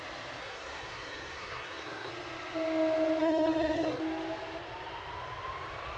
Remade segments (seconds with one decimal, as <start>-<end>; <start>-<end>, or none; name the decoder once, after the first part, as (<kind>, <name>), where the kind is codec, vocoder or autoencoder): 0.4-2.1 (codec, SNAC); 3.2-4.0